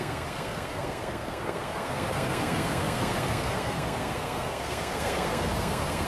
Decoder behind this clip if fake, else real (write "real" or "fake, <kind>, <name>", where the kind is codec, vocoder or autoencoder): fake, codec, SNAC